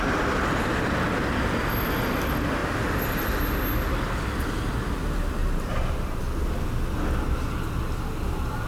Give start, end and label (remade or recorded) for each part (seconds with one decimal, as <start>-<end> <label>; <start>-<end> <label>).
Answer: 0.0-2.6 recorded; 2.6-3.3 remade; 3.3-5.4 recorded; 5.4-6.2 remade; 6.2-8.7 recorded